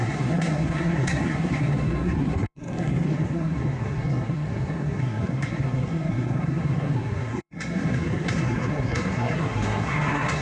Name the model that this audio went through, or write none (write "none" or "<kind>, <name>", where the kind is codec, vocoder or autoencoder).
codec, SNAC